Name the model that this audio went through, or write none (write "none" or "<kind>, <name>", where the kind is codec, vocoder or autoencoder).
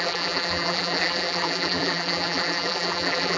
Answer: vocoder, BigVGAN v2